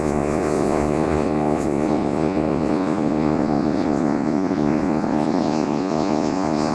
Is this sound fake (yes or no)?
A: yes